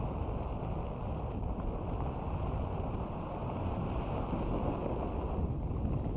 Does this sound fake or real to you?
real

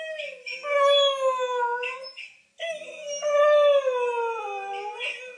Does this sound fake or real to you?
real